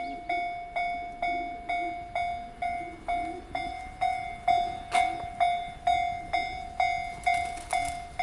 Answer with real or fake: real